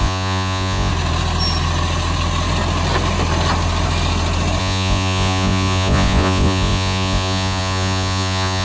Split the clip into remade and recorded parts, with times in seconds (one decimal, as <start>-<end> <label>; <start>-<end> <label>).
0.0-0.9 remade; 0.9-4.6 recorded; 4.6-8.6 remade